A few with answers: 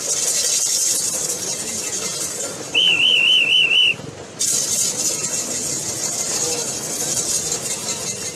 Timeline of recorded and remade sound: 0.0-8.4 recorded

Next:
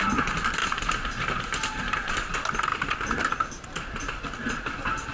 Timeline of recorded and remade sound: 0.0-0.6 recorded; 0.6-2.1 remade; 2.1-5.1 recorded

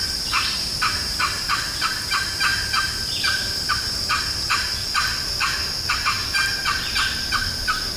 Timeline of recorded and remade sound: 0.0-8.0 remade

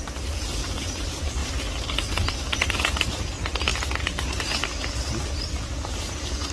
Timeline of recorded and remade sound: 0.0-6.5 recorded

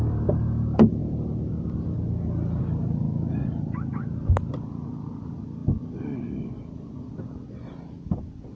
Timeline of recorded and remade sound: 0.0-1.0 remade; 1.0-2.6 recorded; 2.6-3.9 remade; 3.9-4.6 recorded; 4.6-8.5 remade